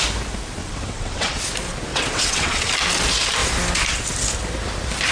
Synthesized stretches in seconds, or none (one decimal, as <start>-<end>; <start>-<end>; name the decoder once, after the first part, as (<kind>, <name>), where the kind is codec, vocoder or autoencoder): 0.6-1.4 (vocoder, WaveNeXt); 1.9-2.7